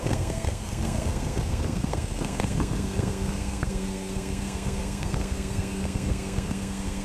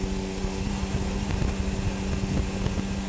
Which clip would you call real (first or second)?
second